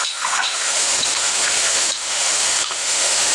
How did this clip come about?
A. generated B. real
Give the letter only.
A